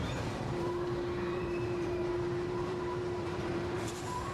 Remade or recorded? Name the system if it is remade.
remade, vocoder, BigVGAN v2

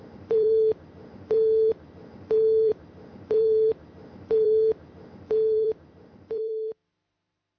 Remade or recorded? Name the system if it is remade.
remade, vocoder, BigVGAN v2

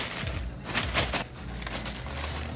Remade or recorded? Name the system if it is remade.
recorded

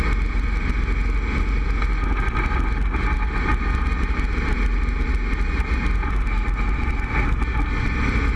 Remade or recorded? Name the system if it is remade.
recorded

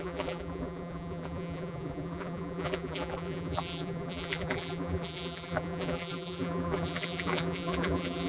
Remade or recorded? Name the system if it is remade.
remade, vocoder, BigVGAN v2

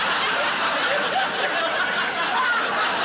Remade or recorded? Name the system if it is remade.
recorded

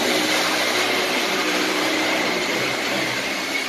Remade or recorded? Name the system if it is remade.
remade, vocoder, BigVGAN v2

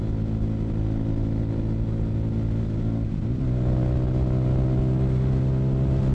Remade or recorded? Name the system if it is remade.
recorded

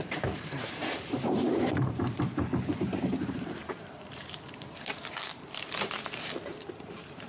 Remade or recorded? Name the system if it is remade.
remade, vocoder, BigVGAN v2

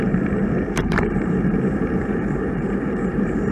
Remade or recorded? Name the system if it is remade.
remade, vocoder, BigVGAN v2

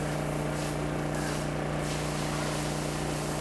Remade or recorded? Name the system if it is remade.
recorded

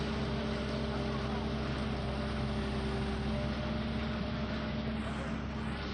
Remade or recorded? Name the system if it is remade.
recorded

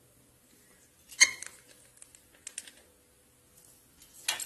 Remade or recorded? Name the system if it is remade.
recorded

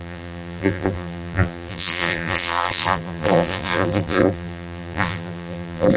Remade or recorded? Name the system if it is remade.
remade, vocoder, BigVGAN v2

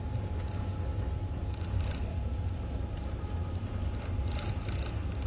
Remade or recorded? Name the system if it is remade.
recorded